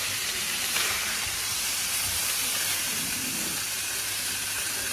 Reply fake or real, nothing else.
fake